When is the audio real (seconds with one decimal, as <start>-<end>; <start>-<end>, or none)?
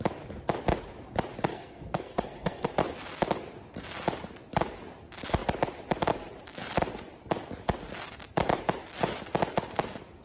0.0-1.5; 2.7-10.2